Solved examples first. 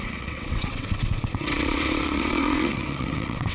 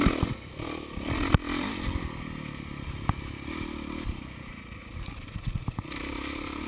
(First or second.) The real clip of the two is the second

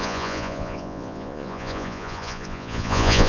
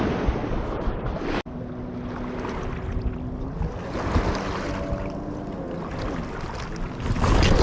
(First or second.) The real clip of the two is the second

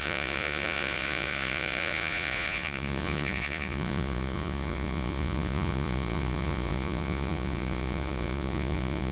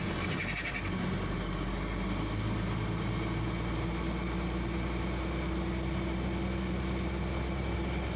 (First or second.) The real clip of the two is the second